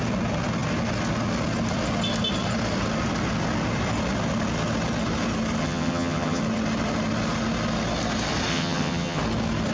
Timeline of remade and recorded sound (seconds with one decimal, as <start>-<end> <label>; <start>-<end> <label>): 0.0-5.6 recorded; 5.6-6.4 remade; 6.4-8.5 recorded; 8.5-9.2 remade; 9.2-9.7 recorded